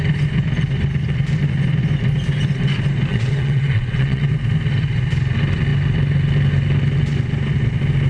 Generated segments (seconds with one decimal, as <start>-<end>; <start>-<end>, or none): 3.1-4.3